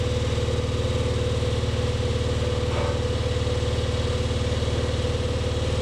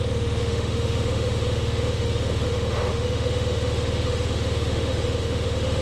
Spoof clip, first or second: second